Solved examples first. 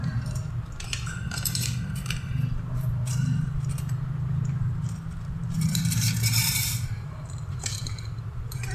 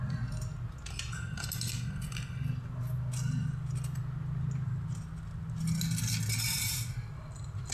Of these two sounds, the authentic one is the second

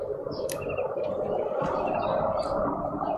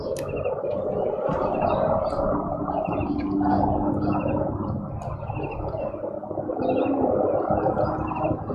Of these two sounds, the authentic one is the second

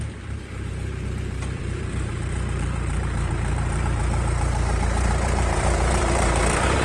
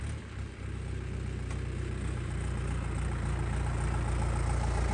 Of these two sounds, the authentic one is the second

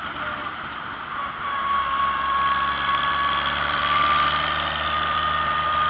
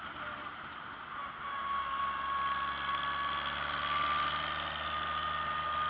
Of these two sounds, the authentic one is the second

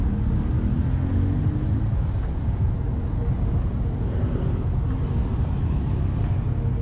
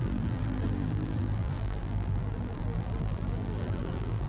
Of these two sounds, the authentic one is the first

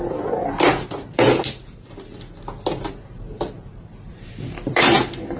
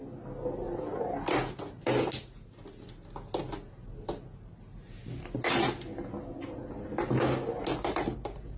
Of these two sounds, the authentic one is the second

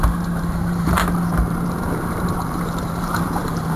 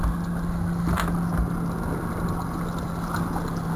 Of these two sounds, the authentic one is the second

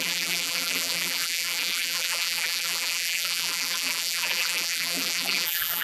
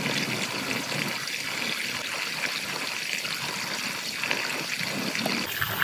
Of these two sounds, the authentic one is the second